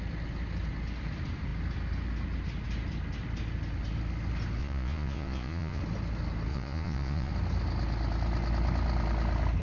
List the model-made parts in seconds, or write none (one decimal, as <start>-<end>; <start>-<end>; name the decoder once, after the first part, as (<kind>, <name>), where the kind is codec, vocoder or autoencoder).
4.6-5.8 (vocoder, Vocos); 6.5-7.3